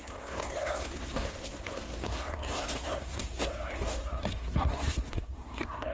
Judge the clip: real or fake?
fake